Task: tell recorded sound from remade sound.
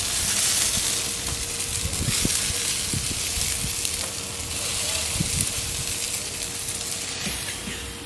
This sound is recorded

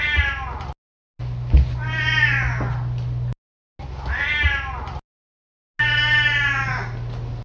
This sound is recorded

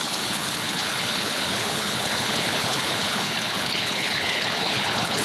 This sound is remade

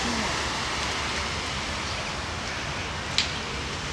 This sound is recorded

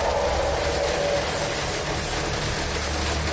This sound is recorded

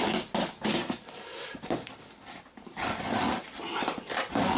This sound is recorded